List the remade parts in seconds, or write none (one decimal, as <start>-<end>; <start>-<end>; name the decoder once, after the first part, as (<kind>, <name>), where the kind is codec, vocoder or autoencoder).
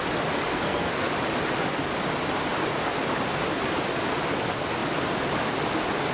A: 0.5-1.1 (codec, SNAC)